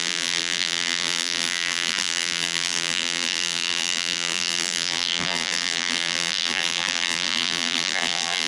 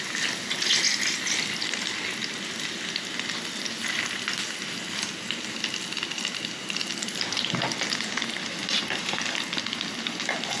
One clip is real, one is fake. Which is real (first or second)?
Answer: second